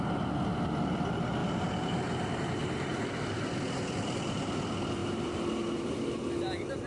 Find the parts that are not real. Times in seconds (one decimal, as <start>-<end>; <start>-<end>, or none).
1.4-2.0; 2.6-3.5; 5.0-5.8